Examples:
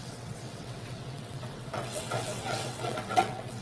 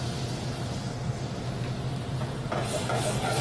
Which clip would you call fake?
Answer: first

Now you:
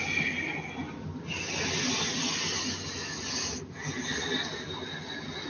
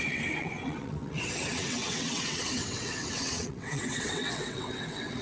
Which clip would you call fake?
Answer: second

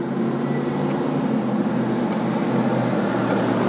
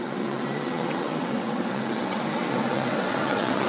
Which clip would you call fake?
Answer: second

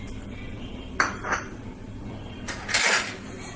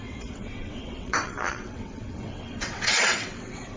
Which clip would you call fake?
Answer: second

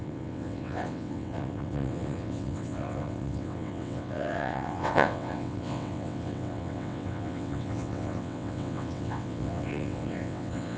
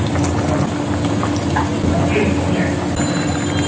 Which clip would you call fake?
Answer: first